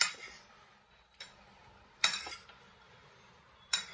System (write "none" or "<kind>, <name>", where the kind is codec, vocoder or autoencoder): none